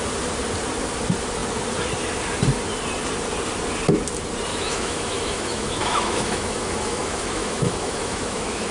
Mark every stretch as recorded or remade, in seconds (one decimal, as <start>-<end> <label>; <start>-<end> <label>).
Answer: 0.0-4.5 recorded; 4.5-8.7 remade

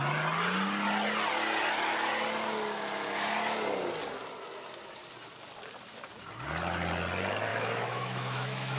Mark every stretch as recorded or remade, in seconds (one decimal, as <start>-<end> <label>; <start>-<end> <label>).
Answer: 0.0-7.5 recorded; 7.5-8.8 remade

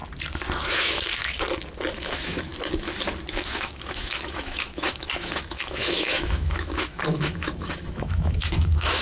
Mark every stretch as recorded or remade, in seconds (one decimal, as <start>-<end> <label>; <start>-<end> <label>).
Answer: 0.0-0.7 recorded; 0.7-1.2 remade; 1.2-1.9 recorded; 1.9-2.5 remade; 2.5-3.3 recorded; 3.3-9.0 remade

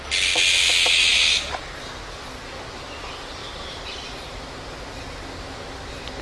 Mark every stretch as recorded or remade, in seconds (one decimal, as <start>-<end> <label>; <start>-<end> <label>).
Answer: 0.0-6.2 recorded

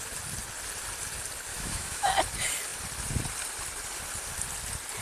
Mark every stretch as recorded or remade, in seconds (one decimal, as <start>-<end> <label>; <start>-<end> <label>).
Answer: 0.0-1.5 recorded; 1.5-2.1 remade; 2.1-5.0 recorded

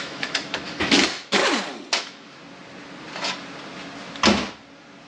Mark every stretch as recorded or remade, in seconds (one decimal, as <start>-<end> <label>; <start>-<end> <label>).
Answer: 0.0-1.4 remade; 1.4-2.0 recorded; 2.0-2.4 remade; 2.4-5.1 recorded